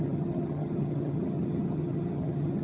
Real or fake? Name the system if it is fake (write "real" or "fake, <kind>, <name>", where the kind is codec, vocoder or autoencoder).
fake, vocoder, HiFi-GAN